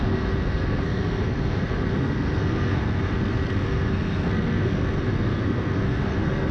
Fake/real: fake